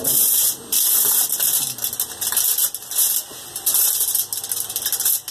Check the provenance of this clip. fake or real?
real